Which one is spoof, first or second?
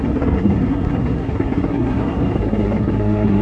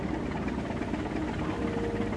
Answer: first